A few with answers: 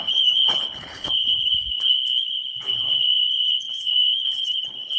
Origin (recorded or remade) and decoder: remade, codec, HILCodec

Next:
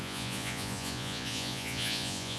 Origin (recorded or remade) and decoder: remade, vocoder, Vocos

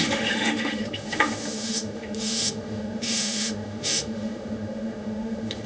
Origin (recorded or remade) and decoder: remade, autoencoder, DAC-VAE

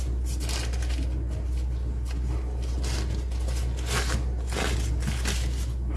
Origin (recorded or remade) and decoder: recorded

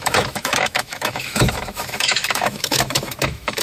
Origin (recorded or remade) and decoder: remade, autoencoder, DAC-VAE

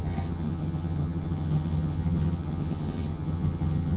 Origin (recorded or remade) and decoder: remade, vocoder, HiFi-GAN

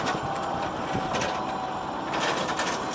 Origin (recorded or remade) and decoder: recorded